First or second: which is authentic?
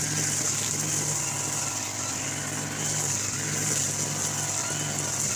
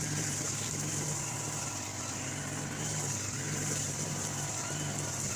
first